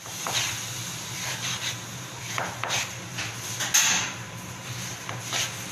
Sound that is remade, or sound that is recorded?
recorded